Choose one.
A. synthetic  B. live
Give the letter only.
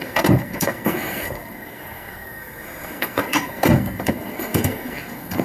A